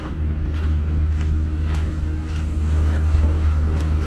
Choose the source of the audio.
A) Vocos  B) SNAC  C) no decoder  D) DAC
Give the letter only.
D